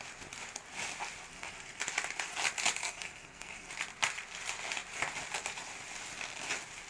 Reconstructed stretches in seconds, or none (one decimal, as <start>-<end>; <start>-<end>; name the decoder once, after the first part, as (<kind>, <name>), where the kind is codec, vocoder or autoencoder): 1.3-1.8 (codec, SNAC); 2.8-3.7